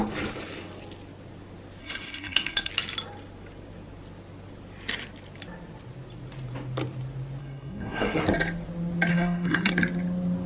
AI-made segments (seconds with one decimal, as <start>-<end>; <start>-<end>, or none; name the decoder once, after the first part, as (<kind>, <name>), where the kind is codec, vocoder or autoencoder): 1.8-2.7 (codec, SNAC); 7.4-8.2; 9.1-9.7